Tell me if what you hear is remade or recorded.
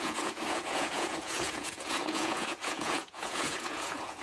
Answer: remade